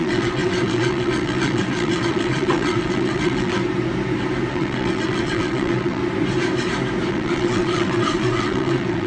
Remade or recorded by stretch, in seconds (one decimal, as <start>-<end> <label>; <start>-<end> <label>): 0.0-3.6 remade; 3.6-4.5 recorded; 4.5-6.0 remade; 6.0-7.1 recorded; 7.1-9.1 remade